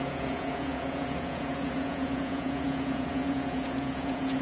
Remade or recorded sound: remade